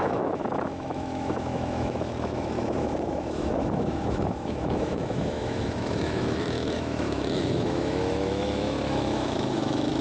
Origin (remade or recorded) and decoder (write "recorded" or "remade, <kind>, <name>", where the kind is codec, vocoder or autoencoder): remade, autoencoder, DAC-VAE